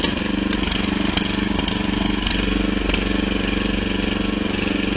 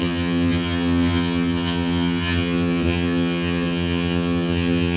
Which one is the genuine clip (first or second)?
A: first